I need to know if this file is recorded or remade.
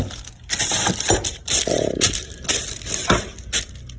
recorded